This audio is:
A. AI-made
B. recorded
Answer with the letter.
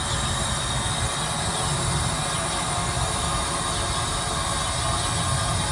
B